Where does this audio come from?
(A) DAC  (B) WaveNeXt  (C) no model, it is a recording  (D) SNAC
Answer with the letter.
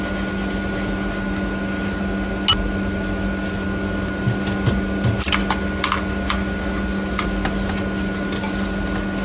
C